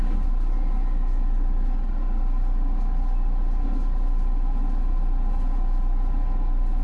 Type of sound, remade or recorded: recorded